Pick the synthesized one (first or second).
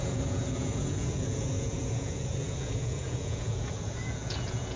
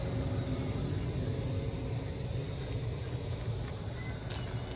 first